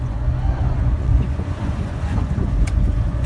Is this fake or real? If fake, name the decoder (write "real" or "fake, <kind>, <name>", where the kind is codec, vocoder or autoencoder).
fake, vocoder, Vocos